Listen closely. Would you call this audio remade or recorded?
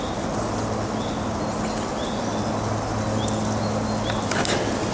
recorded